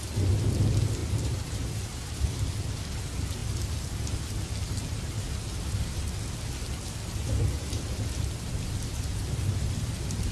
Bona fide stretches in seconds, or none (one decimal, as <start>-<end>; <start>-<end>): 0.0-1.0; 2.8-10.3